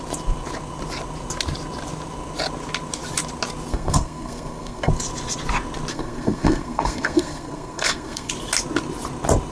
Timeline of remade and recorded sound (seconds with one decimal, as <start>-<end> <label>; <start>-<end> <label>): 0.0-3.7 recorded; 3.7-4.9 remade; 4.9-5.9 recorded; 5.9-8.3 remade; 8.3-9.5 recorded